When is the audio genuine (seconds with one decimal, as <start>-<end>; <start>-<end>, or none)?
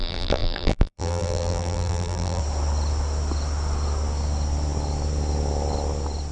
2.4-6.3